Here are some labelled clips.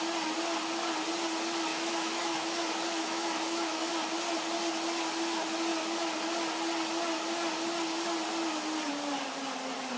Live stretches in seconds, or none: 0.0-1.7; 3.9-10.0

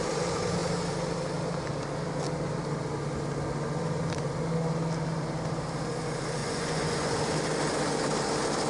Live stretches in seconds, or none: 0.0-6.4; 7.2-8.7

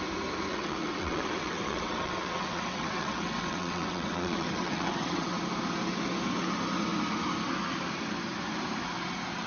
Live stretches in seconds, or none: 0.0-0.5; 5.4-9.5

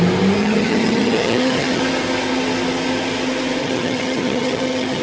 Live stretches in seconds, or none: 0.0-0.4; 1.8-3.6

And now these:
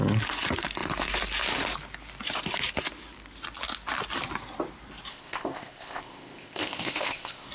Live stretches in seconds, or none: 0.0-5.1

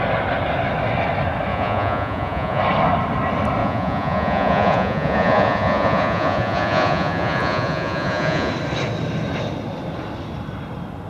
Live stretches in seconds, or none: 0.0-1.5; 2.6-3.6; 8.5-11.1